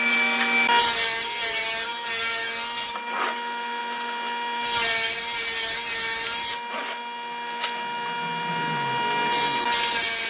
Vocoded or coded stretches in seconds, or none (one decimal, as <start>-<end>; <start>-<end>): none